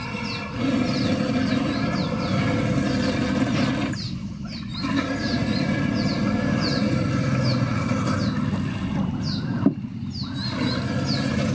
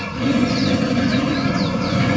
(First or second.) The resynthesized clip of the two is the second